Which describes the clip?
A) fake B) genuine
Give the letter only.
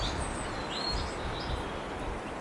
B